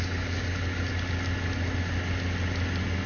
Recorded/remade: recorded